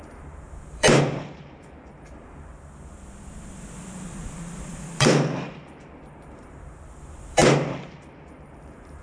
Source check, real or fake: fake